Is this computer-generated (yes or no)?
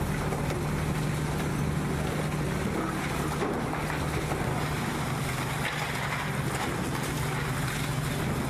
no